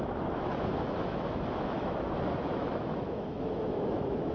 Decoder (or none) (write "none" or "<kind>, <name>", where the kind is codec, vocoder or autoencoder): autoencoder, DAC-VAE